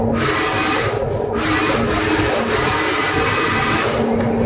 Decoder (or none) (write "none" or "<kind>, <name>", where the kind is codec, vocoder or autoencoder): none